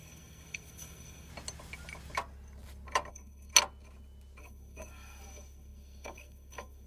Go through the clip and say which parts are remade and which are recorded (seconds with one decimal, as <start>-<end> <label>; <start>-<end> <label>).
0.0-1.3 remade; 1.3-3.1 recorded; 3.1-3.5 remade; 3.5-4.4 recorded; 4.4-6.9 remade